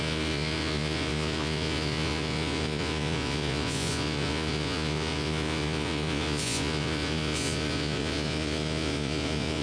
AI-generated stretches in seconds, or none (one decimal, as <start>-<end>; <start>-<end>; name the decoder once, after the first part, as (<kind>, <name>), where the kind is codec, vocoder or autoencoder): 0.0-9.6 (vocoder, Vocos)